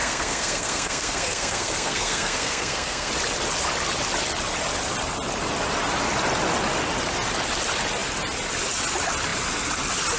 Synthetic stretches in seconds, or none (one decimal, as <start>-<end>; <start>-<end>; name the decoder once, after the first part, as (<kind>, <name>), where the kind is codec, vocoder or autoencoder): 0.0-3.1 (codec, SNAC)